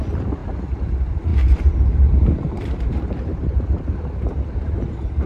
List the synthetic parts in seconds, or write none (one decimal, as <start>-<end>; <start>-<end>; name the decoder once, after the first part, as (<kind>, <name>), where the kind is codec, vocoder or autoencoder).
0.0-0.4 (vocoder, BigVGAN v2); 0.9-5.3